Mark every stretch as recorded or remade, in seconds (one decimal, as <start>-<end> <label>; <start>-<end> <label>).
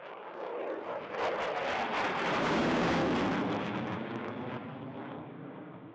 0.0-0.5 remade; 0.5-2.4 recorded; 2.4-3.0 remade; 3.0-3.6 recorded; 3.6-4.6 remade; 4.6-5.2 recorded; 5.2-5.9 remade